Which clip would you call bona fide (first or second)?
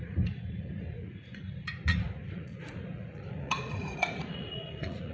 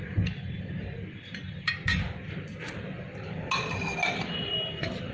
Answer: second